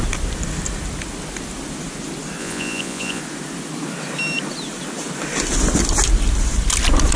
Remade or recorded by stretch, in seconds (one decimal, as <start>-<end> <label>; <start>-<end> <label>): 0.0-2.4 recorded; 2.4-3.2 remade; 3.2-7.2 recorded